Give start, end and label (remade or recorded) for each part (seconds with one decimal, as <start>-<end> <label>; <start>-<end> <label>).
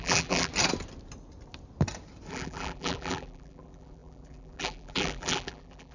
0.0-0.5 remade; 0.5-2.3 recorded; 2.3-5.9 remade